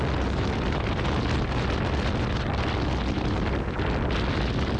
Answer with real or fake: real